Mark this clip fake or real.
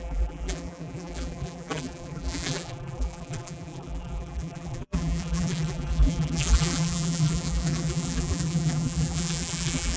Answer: fake